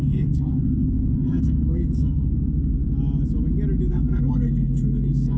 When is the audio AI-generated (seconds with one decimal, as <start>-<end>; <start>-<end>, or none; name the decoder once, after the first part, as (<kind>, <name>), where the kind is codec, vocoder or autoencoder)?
0.0-2.8 (codec, SNAC); 3.9-5.4